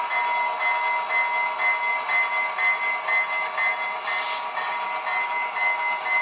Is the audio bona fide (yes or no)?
yes